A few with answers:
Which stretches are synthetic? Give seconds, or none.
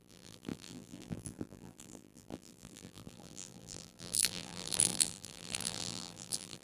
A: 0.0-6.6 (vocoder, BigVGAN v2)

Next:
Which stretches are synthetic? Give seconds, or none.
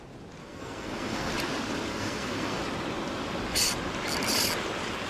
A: 0.4-1.3 (codec, SNAC); 1.9-2.6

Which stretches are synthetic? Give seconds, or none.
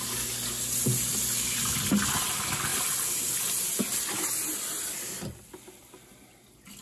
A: none